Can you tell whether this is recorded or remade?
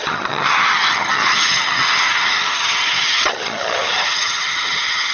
remade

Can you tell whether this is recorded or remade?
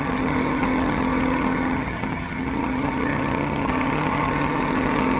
remade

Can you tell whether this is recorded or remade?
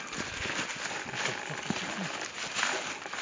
recorded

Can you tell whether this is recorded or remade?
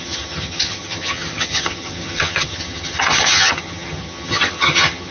remade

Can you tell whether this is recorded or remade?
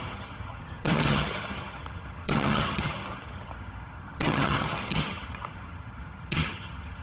remade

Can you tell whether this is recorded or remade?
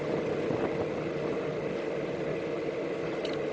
recorded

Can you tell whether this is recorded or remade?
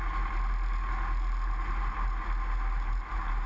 recorded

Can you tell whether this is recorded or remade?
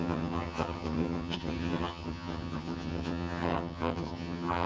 remade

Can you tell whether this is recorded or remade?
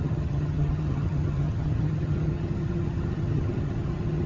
remade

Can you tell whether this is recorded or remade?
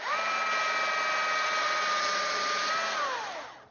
recorded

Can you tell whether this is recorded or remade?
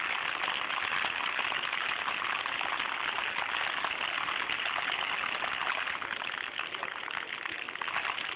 recorded